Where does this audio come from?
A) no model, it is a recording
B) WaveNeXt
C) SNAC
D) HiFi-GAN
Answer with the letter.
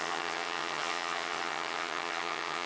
D